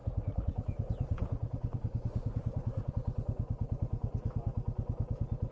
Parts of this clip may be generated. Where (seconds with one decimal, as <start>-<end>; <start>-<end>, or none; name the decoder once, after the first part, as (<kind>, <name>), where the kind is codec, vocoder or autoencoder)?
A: 0.0-2.9 (vocoder, Vocos)